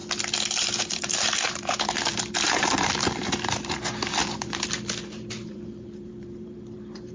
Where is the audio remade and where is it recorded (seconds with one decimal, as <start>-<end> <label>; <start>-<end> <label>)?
0.0-0.8 recorded; 0.8-7.1 remade